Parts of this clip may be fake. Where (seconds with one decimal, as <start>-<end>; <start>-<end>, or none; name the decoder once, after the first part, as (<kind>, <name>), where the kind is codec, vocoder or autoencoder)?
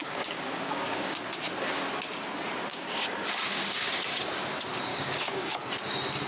0.0-1.2 (codec, DAC); 2.7-4.0; 4.9-5.5